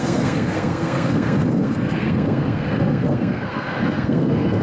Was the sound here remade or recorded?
remade